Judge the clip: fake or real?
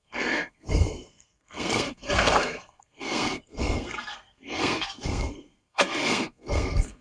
fake